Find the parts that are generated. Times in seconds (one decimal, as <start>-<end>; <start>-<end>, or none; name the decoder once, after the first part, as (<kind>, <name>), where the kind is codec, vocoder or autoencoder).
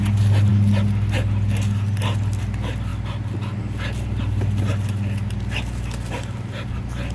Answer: none